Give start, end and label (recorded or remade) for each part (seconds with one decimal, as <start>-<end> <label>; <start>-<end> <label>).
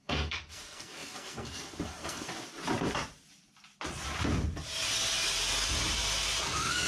0.0-2.3 remade; 2.3-6.4 recorded; 6.4-6.9 remade